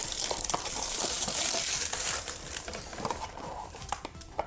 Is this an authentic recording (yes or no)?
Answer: no